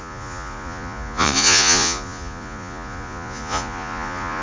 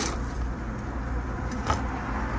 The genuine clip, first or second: second